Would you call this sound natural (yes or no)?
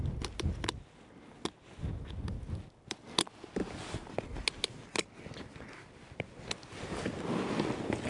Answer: yes